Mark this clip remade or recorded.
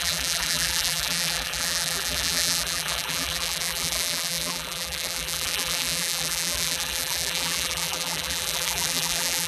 remade